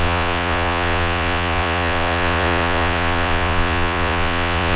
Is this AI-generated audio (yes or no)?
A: yes